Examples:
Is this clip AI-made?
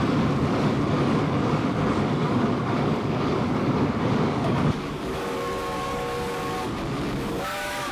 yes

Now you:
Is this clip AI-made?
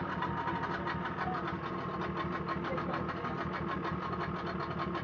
no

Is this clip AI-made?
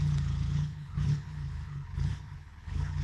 yes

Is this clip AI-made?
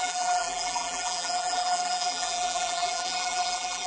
yes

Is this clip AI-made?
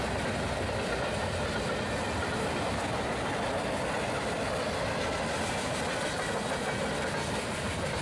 no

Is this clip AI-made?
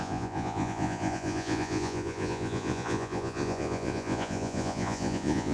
yes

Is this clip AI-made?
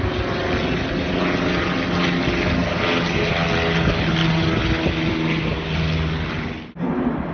no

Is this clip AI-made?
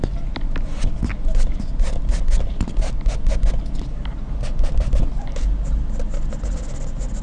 no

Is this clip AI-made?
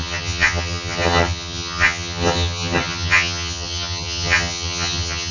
yes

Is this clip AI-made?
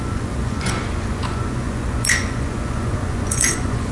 yes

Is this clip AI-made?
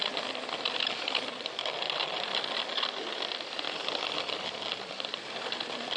no